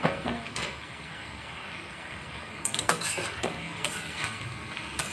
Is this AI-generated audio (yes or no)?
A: yes